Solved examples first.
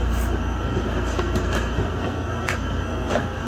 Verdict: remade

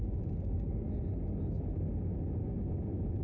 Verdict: recorded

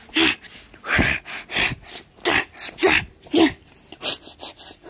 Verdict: recorded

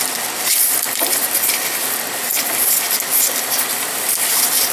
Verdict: recorded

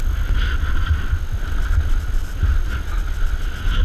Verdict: recorded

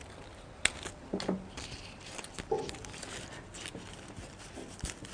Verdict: recorded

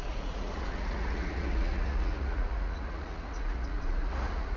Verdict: remade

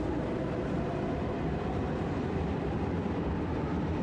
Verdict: remade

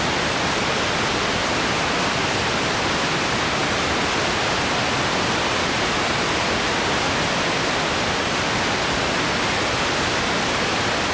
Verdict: recorded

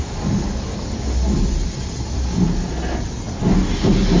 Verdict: recorded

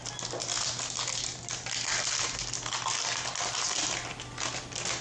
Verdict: recorded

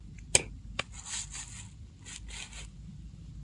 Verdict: recorded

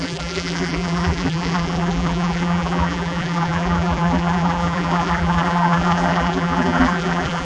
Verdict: remade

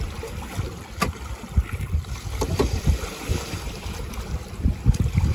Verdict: remade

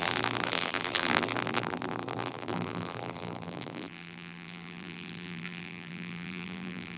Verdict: remade